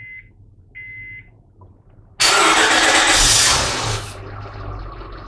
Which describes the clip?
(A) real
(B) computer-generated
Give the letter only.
A